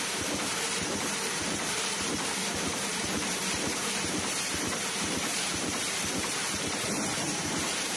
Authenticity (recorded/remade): remade